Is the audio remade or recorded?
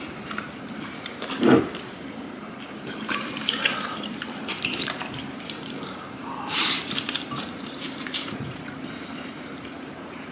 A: remade